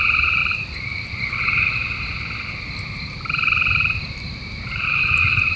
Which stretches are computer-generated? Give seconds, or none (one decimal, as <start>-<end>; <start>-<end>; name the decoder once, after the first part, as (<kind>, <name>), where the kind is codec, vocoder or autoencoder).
0.4-1.2 (vocoder, BigVGAN v2); 1.8-5.6